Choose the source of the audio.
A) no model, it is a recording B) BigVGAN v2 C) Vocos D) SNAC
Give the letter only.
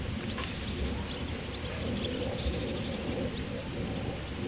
A